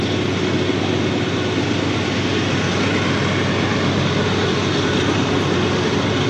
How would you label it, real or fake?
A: real